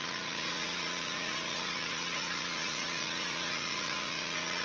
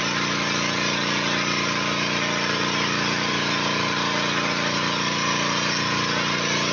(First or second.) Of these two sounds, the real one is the second